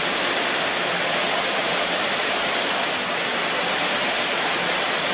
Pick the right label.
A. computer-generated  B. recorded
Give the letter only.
A